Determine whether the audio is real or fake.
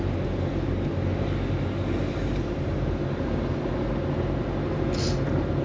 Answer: real